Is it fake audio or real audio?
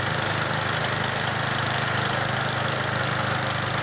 real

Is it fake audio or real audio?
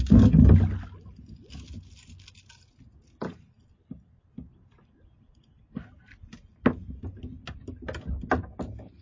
real